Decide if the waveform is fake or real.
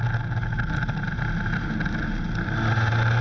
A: real